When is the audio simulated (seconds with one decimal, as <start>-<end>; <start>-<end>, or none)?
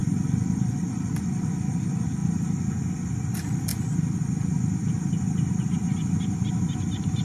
none